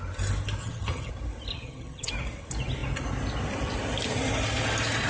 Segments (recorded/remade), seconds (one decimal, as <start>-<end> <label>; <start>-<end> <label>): 0.0-0.6 recorded; 0.6-1.1 remade; 1.1-1.5 recorded; 1.5-2.1 remade; 2.1-5.1 recorded